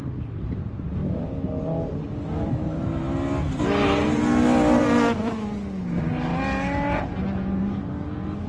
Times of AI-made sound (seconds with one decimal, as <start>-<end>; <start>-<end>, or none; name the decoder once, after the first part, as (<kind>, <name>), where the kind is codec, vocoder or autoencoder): none